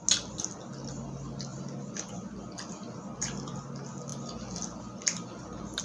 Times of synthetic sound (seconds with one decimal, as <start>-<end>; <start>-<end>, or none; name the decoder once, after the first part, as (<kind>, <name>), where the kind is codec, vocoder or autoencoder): none